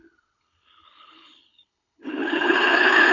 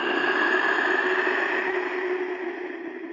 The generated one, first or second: first